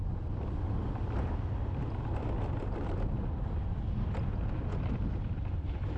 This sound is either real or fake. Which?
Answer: real